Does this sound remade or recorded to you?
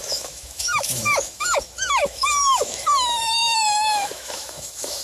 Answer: remade